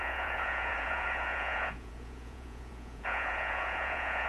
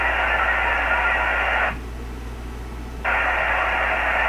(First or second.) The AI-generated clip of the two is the first